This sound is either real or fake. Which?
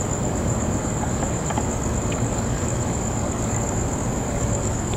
fake